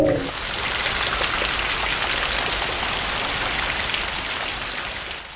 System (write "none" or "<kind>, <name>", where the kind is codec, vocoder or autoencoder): none